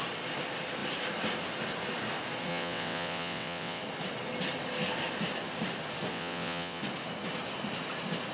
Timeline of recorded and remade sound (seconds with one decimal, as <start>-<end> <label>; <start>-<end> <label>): 0.0-2.5 recorded; 2.5-3.8 remade; 3.8-6.1 recorded; 6.1-6.8 remade; 6.8-8.3 recorded